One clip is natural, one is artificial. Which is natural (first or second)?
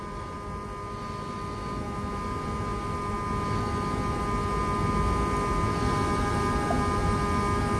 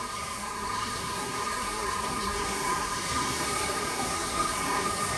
first